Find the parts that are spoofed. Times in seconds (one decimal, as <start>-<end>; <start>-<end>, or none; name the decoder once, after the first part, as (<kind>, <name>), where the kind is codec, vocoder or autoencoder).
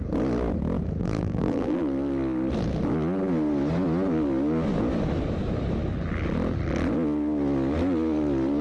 1.0-1.8 (vocoder, BigVGAN v2)